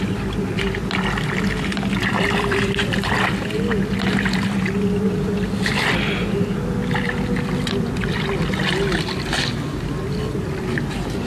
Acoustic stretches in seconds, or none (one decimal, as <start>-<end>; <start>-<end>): 0.0-2.0; 3.3-11.3

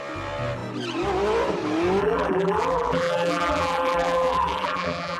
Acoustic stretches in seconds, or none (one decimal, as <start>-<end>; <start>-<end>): 0.0-2.0

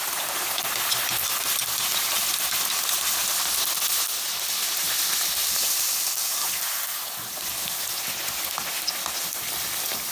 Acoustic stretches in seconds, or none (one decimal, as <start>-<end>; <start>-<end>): 0.0-5.4; 6.6-10.1

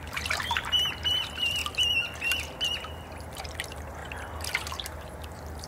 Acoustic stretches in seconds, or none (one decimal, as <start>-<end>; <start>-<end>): 1.6-2.9; 4.0-4.6

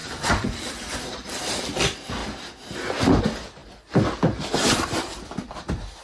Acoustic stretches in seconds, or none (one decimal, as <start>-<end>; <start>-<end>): 1.6-3.6; 5.4-6.0